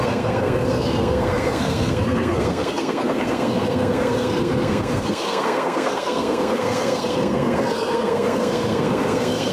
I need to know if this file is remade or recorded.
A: remade